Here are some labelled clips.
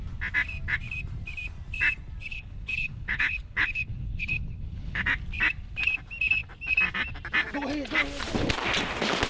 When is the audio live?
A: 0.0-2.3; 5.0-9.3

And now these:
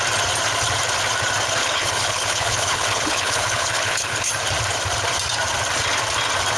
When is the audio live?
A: 0.0-1.6; 4.3-6.6